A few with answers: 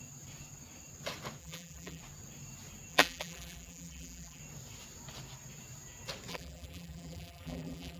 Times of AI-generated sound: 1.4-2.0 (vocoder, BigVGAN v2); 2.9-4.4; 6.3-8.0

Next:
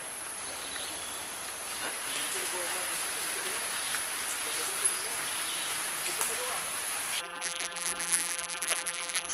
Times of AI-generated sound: 7.2-9.3 (vocoder, BigVGAN v2)

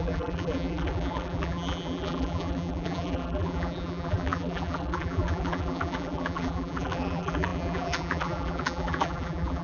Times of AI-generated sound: 0.0-9.6 (vocoder, BigVGAN v2)

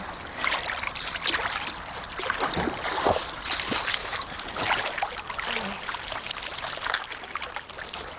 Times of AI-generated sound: 4.0-4.6 (vocoder, BigVGAN v2); 6.5-7.1

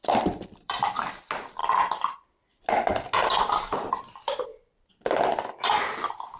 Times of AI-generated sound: 0.0-1.0 (vocoder, BigVGAN v2)